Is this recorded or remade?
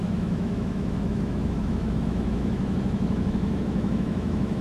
remade